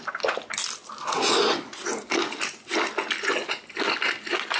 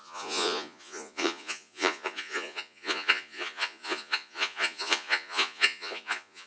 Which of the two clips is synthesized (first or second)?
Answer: second